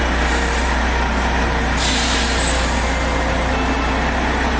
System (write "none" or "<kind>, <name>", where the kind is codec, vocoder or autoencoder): vocoder, BigVGAN v2